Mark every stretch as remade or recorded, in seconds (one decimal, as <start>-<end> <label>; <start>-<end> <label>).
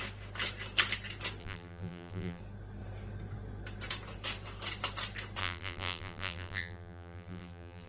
0.0-1.4 recorded; 1.4-2.4 remade; 2.4-5.4 recorded; 5.4-7.9 remade